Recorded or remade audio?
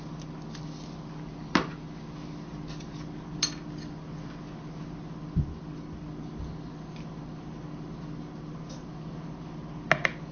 recorded